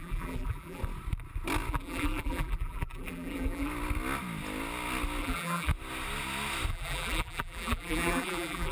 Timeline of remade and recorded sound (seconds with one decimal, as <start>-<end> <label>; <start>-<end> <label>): 0.0-0.8 remade; 0.8-1.7 recorded; 1.7-3.7 remade; 3.7-5.2 recorded; 5.2-5.7 remade; 5.7-6.7 recorded; 6.7-8.7 remade